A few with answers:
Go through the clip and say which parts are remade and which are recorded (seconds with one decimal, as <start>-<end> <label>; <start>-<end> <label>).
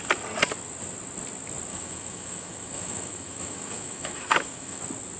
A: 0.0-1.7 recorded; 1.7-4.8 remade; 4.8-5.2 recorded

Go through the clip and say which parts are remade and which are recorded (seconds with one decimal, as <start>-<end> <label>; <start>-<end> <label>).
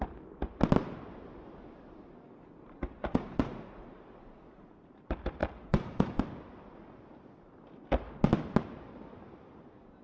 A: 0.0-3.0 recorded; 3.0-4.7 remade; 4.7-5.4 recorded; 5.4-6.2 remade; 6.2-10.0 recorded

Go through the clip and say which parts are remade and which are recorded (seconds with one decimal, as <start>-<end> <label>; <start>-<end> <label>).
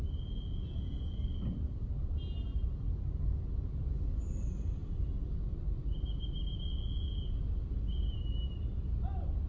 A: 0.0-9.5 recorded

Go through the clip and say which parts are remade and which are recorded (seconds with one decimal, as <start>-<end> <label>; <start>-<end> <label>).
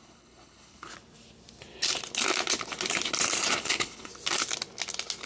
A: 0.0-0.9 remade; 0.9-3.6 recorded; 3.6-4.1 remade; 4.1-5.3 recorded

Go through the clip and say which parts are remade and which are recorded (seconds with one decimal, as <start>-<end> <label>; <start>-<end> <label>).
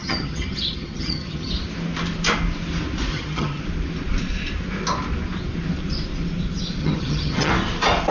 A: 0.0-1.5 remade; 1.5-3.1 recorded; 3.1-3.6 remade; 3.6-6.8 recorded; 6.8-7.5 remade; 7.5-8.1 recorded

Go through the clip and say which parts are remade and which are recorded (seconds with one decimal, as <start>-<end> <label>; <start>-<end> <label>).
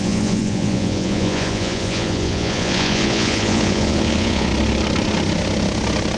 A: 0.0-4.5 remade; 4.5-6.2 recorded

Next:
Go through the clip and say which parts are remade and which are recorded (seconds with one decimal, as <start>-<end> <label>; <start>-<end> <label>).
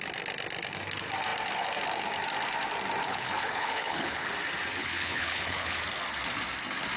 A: 0.0-3.0 recorded; 3.0-4.3 remade; 4.3-4.8 recorded; 4.8-5.8 remade; 5.8-7.0 recorded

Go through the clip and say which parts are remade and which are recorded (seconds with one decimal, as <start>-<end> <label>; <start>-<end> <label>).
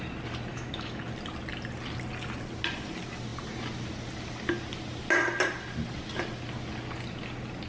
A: 0.0-0.5 recorded; 0.5-1.0 remade; 1.0-7.7 recorded